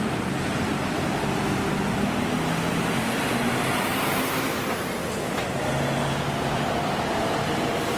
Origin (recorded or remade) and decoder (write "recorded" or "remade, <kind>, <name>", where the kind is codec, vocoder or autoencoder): recorded